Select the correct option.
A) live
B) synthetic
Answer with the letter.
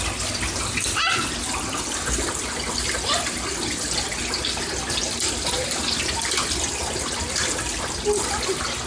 A